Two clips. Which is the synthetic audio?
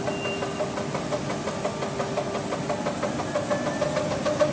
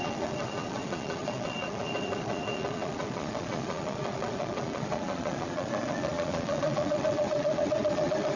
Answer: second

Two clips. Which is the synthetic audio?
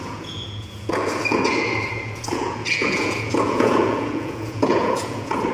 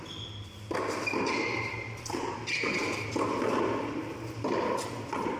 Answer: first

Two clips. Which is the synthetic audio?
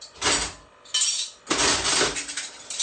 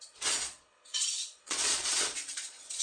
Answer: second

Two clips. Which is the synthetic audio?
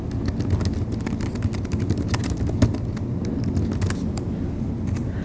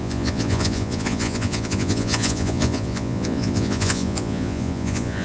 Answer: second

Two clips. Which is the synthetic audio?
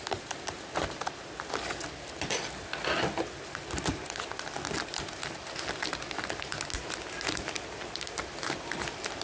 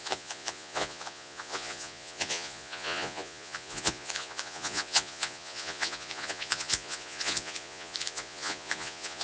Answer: second